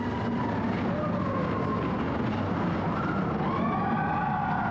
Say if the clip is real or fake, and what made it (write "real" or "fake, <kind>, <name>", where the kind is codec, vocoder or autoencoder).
real